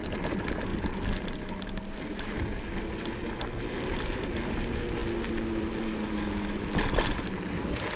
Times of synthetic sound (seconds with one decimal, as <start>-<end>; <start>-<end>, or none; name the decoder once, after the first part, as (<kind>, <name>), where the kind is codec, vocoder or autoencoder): none